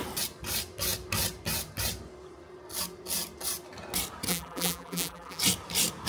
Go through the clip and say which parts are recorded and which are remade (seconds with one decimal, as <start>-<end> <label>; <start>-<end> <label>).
0.0-4.3 recorded; 4.3-5.4 remade; 5.4-6.1 recorded